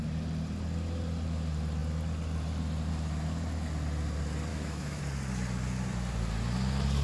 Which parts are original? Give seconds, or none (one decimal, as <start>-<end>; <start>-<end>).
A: 0.0-4.5; 5.0-7.0